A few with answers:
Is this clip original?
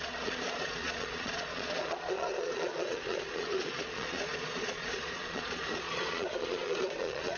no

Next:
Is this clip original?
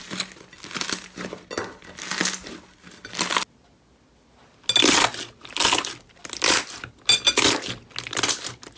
yes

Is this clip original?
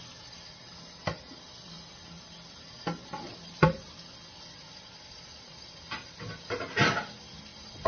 yes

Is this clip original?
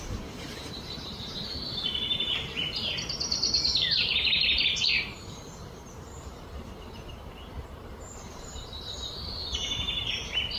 no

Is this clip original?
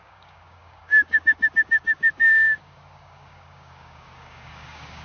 no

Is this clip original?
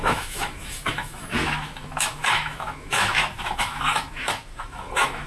no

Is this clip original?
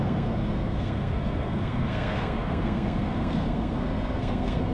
no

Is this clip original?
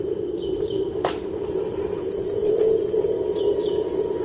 no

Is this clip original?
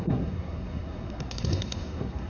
no